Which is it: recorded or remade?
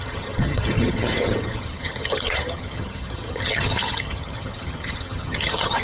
remade